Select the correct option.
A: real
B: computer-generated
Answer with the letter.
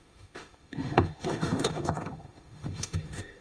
B